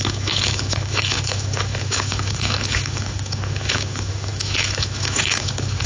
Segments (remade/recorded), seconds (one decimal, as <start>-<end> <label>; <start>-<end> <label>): 0.0-5.9 remade